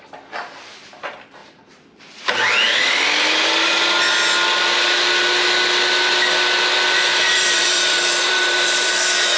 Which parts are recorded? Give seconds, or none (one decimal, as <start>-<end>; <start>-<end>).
0.0-7.1; 8.9-9.4